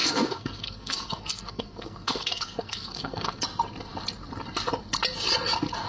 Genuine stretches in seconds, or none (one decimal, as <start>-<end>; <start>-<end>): 3.4-5.9